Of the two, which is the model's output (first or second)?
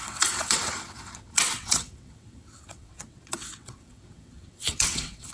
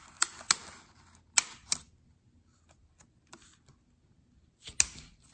first